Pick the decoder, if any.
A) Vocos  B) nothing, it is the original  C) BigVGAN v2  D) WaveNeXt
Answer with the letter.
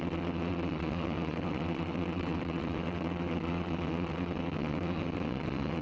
D